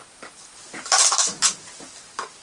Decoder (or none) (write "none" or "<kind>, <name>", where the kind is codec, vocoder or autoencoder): none